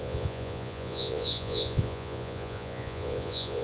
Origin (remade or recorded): remade